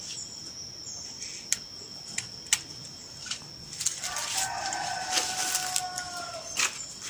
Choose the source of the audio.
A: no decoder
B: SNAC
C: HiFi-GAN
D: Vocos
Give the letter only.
A